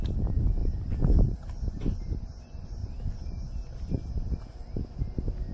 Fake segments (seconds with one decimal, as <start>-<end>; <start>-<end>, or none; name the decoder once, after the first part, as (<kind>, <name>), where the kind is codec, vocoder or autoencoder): 0.6-2.0 (vocoder, BigVGAN v2); 2.8-3.4

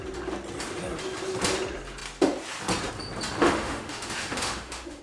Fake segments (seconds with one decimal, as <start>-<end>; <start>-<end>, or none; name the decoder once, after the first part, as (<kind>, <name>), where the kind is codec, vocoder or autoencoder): 3.4-5.0 (autoencoder, DAC-VAE)